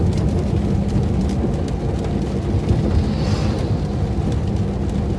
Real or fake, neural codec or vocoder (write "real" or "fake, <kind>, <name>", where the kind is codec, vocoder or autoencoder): real